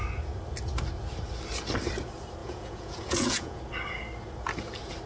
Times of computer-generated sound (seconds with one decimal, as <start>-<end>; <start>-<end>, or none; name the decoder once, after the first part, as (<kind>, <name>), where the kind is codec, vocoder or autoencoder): 2.4-3.6 (vocoder, Vocos)